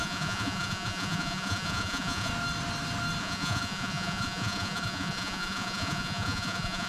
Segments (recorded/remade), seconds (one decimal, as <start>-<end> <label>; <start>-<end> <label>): 0.0-2.3 remade; 2.3-3.2 recorded; 3.2-6.9 remade